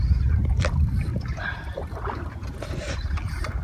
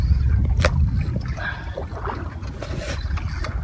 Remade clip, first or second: first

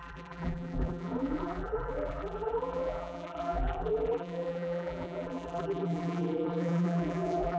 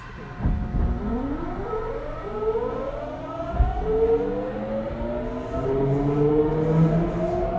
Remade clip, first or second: first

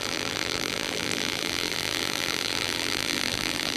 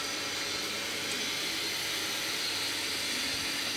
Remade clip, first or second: first